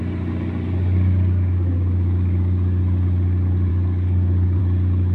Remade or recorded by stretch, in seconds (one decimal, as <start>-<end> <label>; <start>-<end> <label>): 0.0-3.7 recorded; 3.7-4.6 remade; 4.6-5.1 recorded